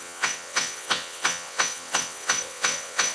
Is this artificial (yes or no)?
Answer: yes